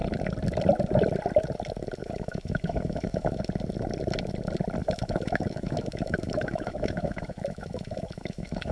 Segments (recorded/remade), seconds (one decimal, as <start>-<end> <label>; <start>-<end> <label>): 0.0-2.0 recorded; 2.0-3.4 remade; 3.4-4.8 recorded; 4.8-8.7 remade